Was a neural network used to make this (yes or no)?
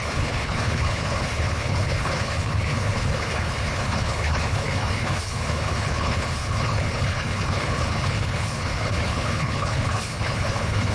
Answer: yes